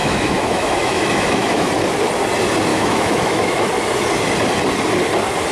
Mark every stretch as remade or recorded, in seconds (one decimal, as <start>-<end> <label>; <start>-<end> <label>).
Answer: 0.0-1.7 remade; 1.7-2.7 recorded; 2.7-3.7 remade; 3.7-5.5 recorded